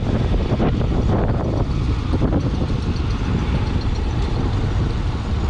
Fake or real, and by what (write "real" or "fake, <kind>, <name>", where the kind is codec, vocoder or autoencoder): real